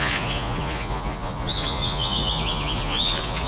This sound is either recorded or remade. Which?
remade